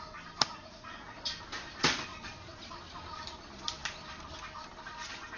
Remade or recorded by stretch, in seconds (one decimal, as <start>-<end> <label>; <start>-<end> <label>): 0.0-0.5 recorded; 0.5-1.2 remade; 1.2-5.4 recorded

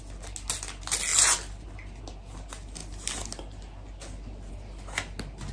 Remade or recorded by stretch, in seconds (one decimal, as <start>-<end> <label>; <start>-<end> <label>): 0.0-5.5 recorded

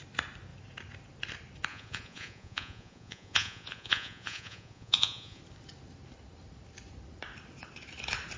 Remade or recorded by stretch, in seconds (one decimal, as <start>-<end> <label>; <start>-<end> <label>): 0.0-1.7 recorded; 1.7-5.4 remade; 5.4-8.4 recorded

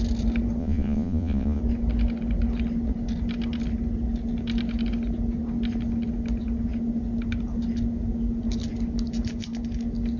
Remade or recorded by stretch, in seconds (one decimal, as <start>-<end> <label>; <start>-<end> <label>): 0.0-0.6 recorded; 0.6-1.6 remade; 1.6-10.2 recorded

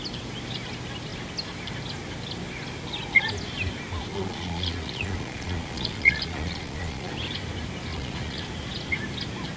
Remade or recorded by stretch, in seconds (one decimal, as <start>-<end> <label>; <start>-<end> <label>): 0.0-4.1 recorded; 4.1-7.1 remade; 7.1-7.9 recorded; 7.9-8.4 remade; 8.4-9.6 recorded

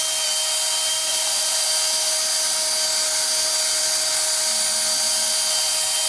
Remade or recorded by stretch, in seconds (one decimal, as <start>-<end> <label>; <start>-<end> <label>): 0.0-1.1 recorded; 1.1-1.7 remade; 1.7-6.1 recorded

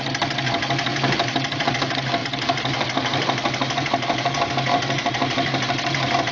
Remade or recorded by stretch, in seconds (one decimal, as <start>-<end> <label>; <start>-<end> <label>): 0.0-6.3 recorded